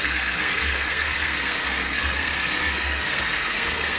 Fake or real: fake